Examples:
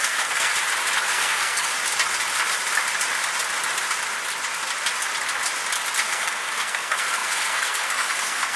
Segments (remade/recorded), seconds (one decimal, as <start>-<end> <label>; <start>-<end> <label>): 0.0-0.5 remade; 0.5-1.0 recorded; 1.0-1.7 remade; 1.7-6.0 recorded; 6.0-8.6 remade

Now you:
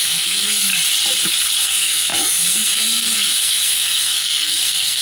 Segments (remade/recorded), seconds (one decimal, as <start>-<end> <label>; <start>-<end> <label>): 0.0-0.7 remade; 0.7-1.6 recorded; 1.6-5.0 remade

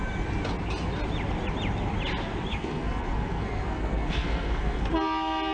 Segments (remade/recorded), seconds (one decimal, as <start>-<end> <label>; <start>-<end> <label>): 0.0-2.5 recorded; 2.5-4.9 remade; 4.9-5.5 recorded